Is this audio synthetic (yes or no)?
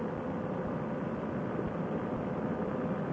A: no